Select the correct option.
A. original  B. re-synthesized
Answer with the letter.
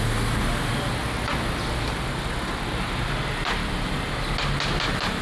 A